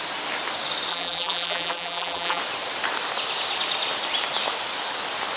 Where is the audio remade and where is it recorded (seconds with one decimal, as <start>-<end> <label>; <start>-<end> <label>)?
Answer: 0.0-0.9 recorded; 0.9-2.4 remade; 2.4-5.4 recorded